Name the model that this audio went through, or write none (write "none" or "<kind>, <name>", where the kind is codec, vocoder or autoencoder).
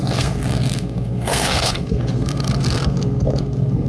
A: codec, SNAC